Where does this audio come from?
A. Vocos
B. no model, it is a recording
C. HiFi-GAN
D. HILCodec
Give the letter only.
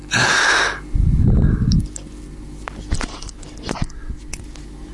B